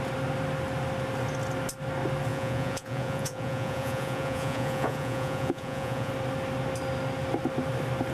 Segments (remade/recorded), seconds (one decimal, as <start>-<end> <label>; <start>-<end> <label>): 0.0-2.3 recorded; 2.3-6.1 remade; 6.1-8.1 recorded